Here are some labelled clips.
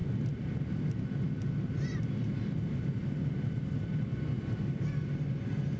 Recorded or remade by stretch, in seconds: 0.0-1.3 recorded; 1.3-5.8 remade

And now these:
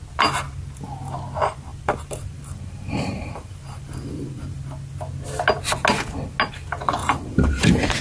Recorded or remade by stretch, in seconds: 0.0-1.7 recorded; 1.7-4.6 remade; 4.6-7.0 recorded; 7.0-7.5 remade; 7.5-8.0 recorded

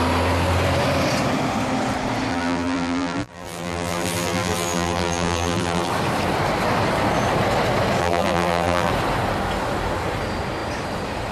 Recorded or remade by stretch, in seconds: 0.0-2.3 recorded; 2.3-5.9 remade; 5.9-8.0 recorded; 8.0-8.9 remade; 8.9-11.3 recorded

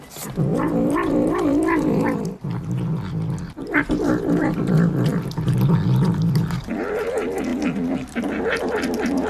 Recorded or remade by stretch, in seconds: 0.0-9.3 recorded

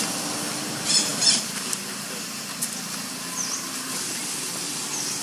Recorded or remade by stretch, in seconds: 0.0-1.1 recorded; 1.1-2.6 remade; 2.6-5.2 recorded

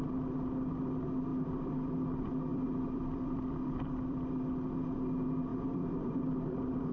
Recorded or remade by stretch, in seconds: 0.0-1.3 recorded; 1.3-1.9 remade; 1.9-2.5 recorded; 2.5-4.3 remade; 4.3-5.5 recorded; 5.5-6.9 remade

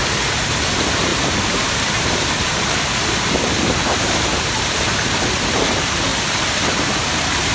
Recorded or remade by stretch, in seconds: 0.0-0.5 recorded; 0.5-6.1 remade; 6.1-6.7 recorded; 6.7-7.5 remade

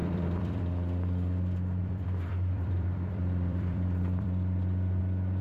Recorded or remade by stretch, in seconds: 0.0-0.6 remade; 0.6-1.8 recorded; 1.8-5.0 remade; 5.0-5.4 recorded